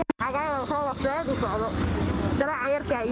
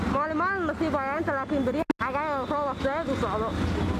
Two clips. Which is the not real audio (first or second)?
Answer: first